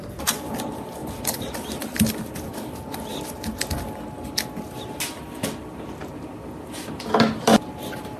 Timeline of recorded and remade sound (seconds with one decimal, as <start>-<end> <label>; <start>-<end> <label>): 0.0-8.2 recorded